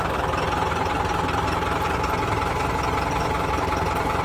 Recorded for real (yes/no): yes